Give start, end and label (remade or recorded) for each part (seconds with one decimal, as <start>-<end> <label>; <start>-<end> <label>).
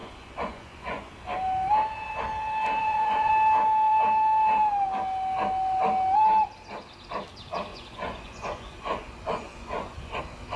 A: 0.0-1.1 remade; 1.1-2.8 recorded; 2.8-3.3 remade; 3.3-7.7 recorded; 7.7-10.2 remade; 10.2-10.6 recorded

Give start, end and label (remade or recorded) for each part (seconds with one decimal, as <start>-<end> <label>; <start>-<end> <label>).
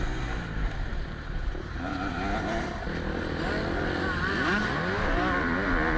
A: 0.0-0.9 recorded; 0.9-2.1 remade; 2.1-6.0 recorded